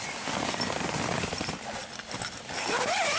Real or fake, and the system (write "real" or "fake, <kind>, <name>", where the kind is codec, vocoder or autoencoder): real